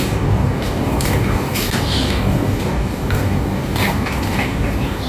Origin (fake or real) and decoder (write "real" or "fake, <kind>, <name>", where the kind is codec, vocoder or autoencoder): fake, codec, DAC